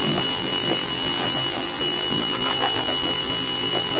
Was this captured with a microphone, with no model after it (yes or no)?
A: no